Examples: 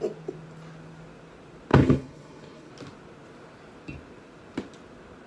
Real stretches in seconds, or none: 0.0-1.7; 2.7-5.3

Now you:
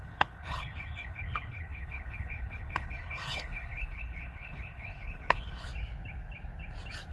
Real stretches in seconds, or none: 5.7-7.1

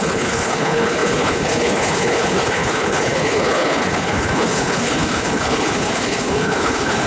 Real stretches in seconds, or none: none

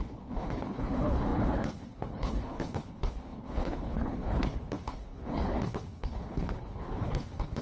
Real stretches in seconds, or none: none